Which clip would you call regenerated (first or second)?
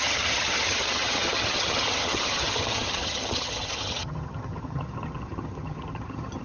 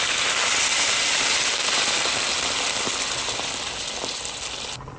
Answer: first